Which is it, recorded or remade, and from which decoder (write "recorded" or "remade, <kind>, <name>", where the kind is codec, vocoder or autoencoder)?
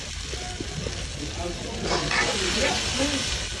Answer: recorded